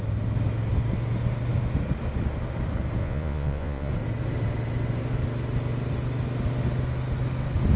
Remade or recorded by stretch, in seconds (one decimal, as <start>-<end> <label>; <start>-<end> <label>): 0.0-3.0 recorded; 3.0-3.9 remade; 3.9-7.8 recorded